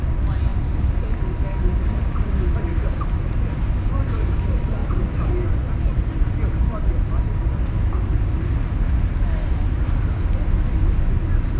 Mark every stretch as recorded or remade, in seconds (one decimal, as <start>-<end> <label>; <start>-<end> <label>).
0.0-4.8 recorded; 4.8-5.3 remade; 5.3-11.6 recorded